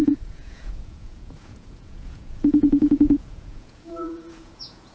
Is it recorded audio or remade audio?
remade